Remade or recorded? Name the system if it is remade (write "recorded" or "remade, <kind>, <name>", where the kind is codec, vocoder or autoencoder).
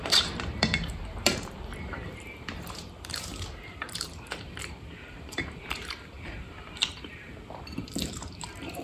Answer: remade, vocoder, BigVGAN v2